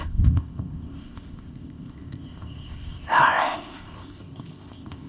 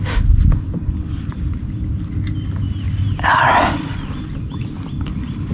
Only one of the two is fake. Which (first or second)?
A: first